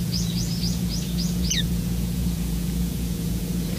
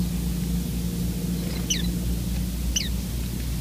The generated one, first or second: first